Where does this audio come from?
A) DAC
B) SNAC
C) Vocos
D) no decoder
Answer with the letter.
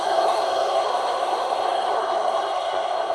B